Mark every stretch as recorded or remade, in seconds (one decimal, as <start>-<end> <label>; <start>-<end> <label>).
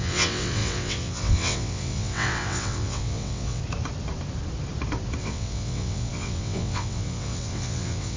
0.0-3.6 remade; 3.6-5.2 recorded; 5.2-8.2 remade